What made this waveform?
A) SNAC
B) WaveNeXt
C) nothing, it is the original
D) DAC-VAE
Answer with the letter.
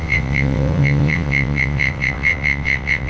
B